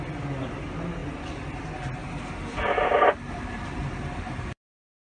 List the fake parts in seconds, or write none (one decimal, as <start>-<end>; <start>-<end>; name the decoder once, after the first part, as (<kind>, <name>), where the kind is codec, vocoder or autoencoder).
2.0-5.1 (vocoder, BigVGAN v2)